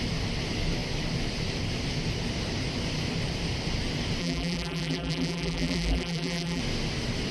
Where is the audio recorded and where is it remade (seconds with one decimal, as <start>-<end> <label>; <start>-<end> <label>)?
0.0-4.2 recorded; 4.2-6.6 remade; 6.6-7.3 recorded